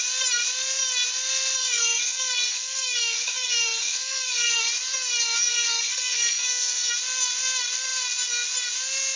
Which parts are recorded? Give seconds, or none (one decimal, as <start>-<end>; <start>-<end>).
0.0-1.6; 4.6-5.5; 6.9-9.2